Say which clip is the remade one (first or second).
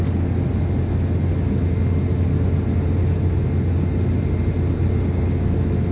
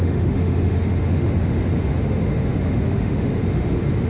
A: second